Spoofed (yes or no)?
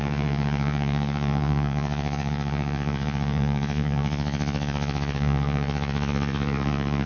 yes